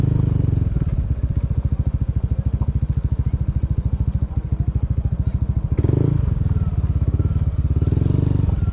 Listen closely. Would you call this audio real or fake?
real